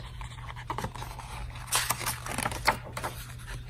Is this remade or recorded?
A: recorded